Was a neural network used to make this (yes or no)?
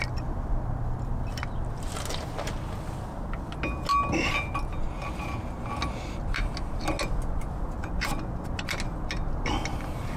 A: no